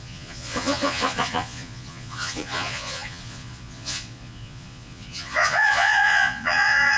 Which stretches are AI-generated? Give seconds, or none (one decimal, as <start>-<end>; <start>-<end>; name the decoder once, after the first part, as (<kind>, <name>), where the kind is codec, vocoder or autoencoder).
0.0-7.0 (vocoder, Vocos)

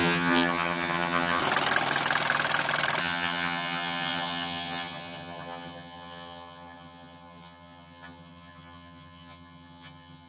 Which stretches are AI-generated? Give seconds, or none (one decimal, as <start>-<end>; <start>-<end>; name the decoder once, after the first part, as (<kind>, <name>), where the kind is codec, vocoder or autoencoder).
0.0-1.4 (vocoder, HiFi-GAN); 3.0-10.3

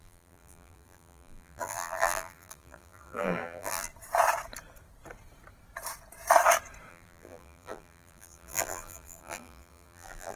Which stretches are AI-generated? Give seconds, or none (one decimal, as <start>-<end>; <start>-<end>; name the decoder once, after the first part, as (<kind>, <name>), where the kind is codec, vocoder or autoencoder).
0.0-3.9 (vocoder, BigVGAN v2); 6.9-10.4

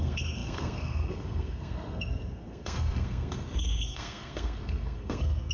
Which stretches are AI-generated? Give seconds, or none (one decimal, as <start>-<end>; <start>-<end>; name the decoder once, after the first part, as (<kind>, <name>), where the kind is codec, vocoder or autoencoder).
0.0-5.5 (codec, SNAC)

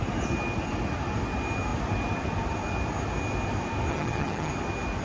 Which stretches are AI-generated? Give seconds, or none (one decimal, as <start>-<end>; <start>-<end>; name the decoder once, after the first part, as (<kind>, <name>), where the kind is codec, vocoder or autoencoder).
3.9-4.5 (vocoder, HiFi-GAN)

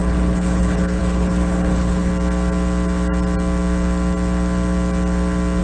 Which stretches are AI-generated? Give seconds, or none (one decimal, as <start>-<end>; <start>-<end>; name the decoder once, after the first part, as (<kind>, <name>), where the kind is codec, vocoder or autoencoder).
0.0-2.1 (codec, HILCodec)